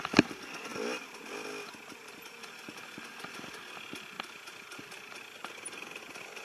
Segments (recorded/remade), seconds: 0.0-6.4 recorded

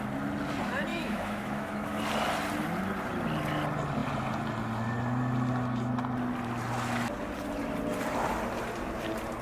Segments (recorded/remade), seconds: 0.0-0.9 recorded; 0.9-2.0 remade; 2.0-9.4 recorded

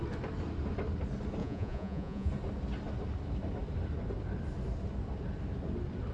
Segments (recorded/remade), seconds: 0.0-1.4 recorded; 1.4-2.3 remade; 2.3-6.1 recorded

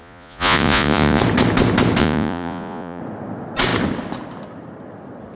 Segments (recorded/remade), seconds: 0.0-1.2 remade; 1.2-2.0 recorded; 2.0-3.0 remade; 3.0-5.3 recorded

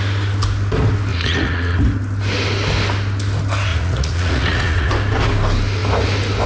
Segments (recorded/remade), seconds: 0.0-1.1 recorded; 1.1-1.8 remade; 1.8-3.7 recorded; 3.7-4.9 remade; 4.9-6.5 recorded

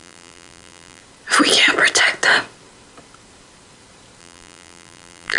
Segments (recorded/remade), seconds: 0.0-1.0 remade; 1.0-4.2 recorded; 4.2-5.4 remade

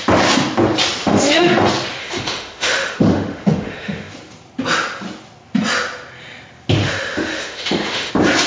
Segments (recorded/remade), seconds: 0.0-1.0 recorded; 1.0-1.5 remade; 1.5-2.0 recorded; 2.0-4.1 remade; 4.1-6.8 recorded; 6.8-8.1 remade; 8.1-8.5 recorded

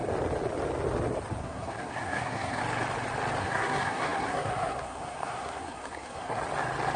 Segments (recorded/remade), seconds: 0.0-1.4 recorded; 1.4-2.6 remade; 2.6-3.4 recorded; 3.4-6.4 remade; 6.4-7.0 recorded